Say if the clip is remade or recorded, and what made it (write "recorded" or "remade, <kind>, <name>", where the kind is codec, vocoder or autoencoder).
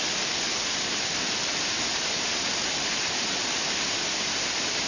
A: recorded